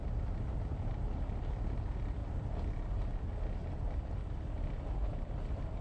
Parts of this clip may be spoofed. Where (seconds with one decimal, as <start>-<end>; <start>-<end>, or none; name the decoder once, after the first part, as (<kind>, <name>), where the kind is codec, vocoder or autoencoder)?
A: none